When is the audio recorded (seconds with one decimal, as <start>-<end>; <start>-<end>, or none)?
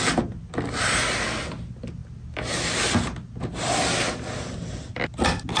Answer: 0.0-5.6